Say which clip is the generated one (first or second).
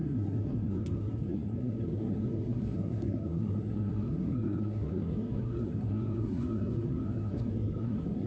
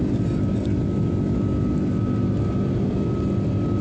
first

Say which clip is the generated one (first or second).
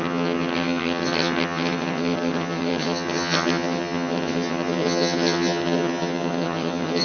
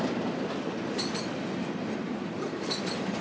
first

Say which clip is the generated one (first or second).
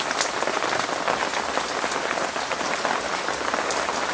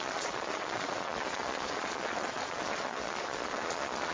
second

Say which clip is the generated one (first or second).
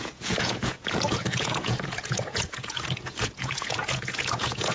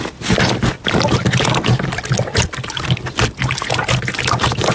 first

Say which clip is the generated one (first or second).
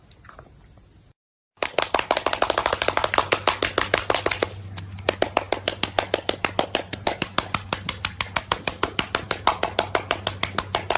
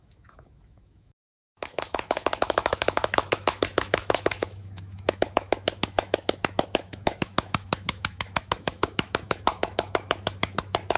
second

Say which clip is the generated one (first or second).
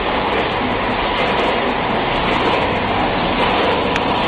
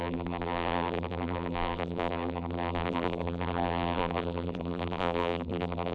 second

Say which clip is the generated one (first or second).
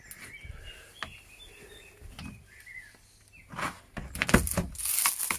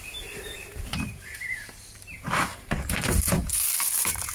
second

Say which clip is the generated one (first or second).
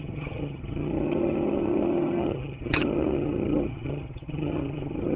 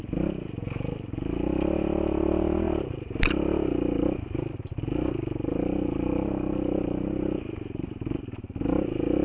first